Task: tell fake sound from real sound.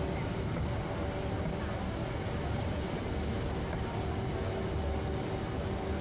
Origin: real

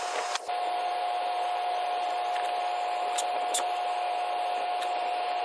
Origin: real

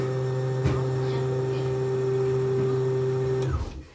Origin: real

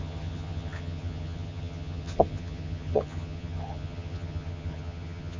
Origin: fake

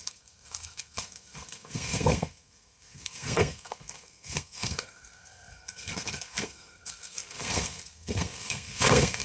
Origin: fake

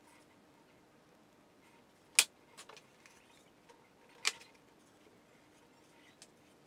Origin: real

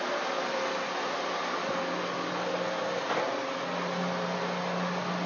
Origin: real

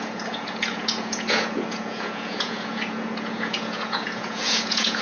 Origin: fake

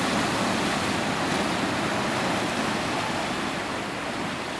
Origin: real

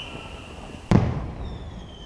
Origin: fake